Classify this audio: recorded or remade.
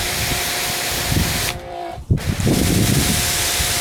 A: remade